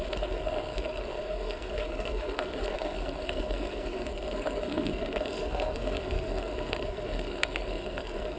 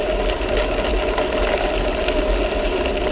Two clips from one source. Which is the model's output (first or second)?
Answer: first